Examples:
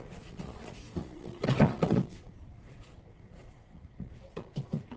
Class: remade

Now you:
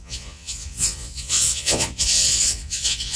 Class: remade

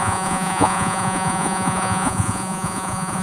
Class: remade